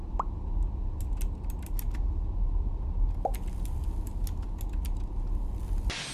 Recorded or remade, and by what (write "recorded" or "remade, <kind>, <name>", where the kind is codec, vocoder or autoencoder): recorded